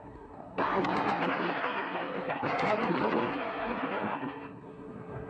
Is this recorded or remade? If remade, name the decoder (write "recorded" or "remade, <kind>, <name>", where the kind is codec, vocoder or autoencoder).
remade, codec, SNAC